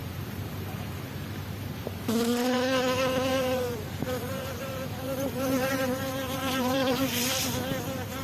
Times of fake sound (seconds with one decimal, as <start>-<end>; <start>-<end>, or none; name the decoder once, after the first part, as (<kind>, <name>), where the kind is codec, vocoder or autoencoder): 0.0-2.6 (vocoder, BigVGAN v2); 3.3-7.4